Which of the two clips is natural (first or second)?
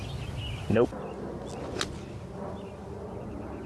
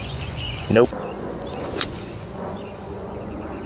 first